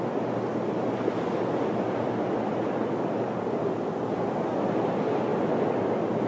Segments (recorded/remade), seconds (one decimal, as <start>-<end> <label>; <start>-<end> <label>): 0.0-6.3 recorded